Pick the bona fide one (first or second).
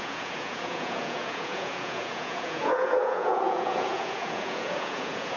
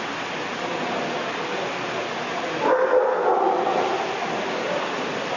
second